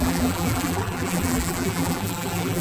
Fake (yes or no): yes